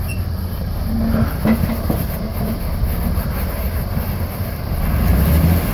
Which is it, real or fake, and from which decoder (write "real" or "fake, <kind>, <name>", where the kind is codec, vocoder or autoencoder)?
real